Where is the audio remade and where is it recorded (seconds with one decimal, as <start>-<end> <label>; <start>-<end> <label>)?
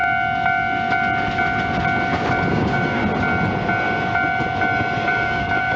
0.0-2.5 recorded; 2.5-3.0 remade; 3.0-5.1 recorded; 5.1-5.8 remade